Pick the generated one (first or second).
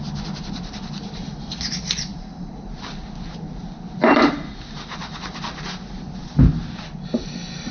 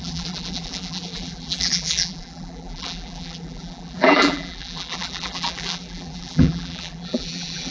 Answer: second